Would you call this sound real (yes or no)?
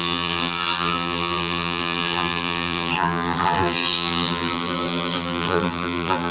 no